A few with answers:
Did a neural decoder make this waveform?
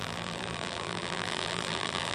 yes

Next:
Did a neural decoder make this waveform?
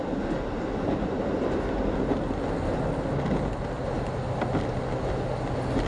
no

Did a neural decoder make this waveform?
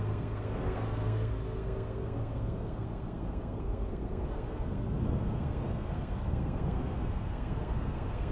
yes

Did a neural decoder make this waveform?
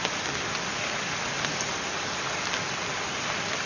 no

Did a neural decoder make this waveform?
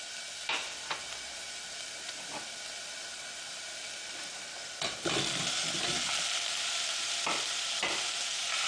no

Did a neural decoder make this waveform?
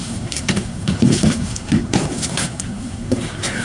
yes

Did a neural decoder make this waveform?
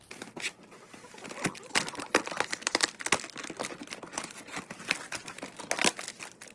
no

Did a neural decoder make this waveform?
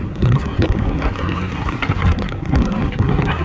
yes